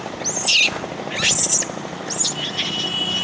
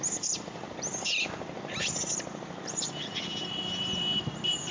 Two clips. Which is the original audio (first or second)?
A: first